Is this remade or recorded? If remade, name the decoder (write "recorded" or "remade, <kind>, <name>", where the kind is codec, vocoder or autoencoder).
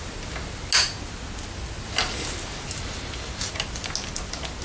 recorded